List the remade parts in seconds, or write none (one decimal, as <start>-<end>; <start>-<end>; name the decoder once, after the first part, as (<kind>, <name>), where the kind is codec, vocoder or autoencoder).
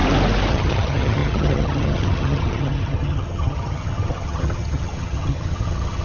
0.5-6.0 (vocoder, HiFi-GAN)